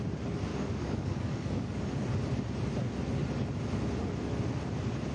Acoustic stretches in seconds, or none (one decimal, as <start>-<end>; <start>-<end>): 0.0-0.5; 2.1-5.1